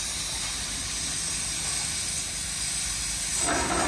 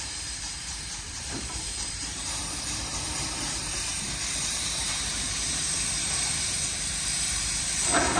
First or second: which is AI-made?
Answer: second